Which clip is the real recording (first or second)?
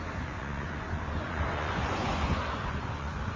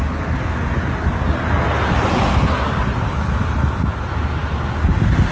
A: second